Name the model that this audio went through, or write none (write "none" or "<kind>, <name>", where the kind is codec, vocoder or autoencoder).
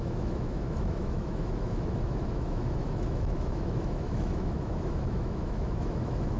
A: autoencoder, DAC-VAE